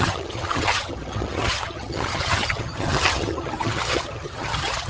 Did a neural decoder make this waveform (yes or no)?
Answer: yes